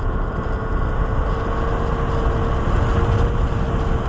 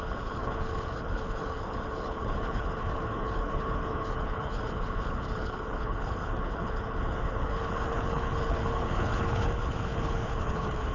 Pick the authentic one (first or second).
first